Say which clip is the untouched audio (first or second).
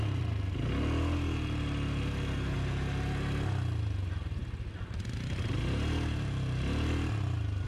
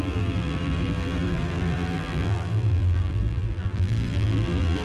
first